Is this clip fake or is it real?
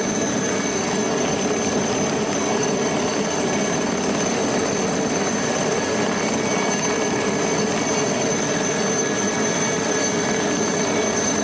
real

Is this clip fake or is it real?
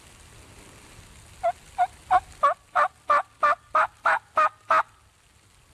real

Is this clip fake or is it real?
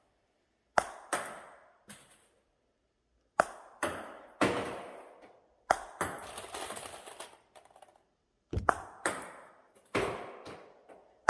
real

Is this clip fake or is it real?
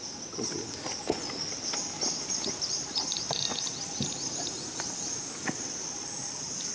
real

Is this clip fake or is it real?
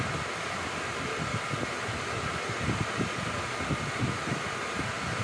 real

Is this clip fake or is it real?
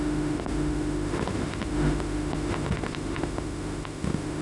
fake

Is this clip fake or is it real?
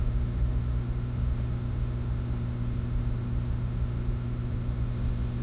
fake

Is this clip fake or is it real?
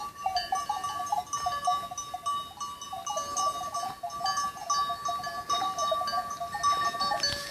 real